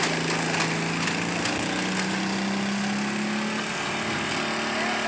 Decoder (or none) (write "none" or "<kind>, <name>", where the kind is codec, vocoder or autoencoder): none